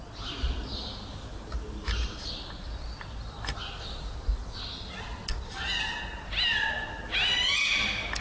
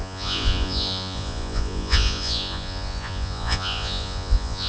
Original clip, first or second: first